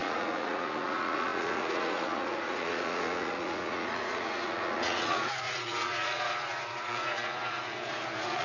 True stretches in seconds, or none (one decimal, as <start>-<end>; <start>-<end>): none